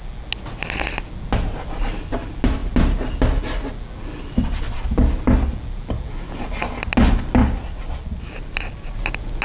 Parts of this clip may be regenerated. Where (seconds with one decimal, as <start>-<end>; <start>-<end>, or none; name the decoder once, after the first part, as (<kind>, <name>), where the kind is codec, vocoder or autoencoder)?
none

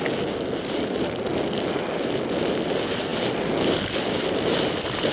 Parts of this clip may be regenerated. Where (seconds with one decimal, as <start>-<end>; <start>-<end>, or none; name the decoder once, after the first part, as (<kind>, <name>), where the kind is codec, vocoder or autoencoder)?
1.3-1.8 (vocoder, BigVGAN v2)

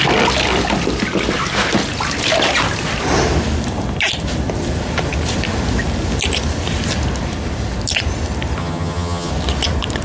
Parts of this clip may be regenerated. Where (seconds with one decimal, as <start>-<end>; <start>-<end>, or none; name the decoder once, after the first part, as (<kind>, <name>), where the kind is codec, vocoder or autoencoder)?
8.6-9.3 (vocoder, HiFi-GAN)

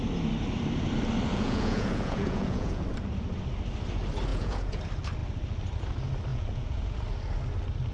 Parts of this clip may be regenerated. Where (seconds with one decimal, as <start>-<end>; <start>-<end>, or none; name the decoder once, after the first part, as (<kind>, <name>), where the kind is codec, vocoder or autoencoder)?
1.3-2.8 (vocoder, Vocos); 4.3-4.8; 6.3-7.0